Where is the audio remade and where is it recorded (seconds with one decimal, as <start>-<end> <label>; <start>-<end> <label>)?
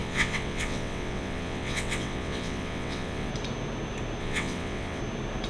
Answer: 0.0-3.3 remade; 3.3-4.2 recorded; 4.2-5.0 remade; 5.0-5.5 recorded